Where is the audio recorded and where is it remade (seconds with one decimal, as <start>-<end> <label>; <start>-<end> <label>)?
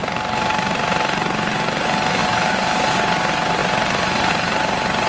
0.0-0.6 remade; 0.6-2.2 recorded; 2.2-2.9 remade; 2.9-3.6 recorded; 3.6-4.3 remade; 4.3-5.1 recorded